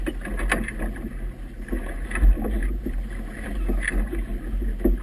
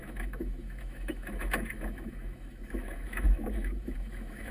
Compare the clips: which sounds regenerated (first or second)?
second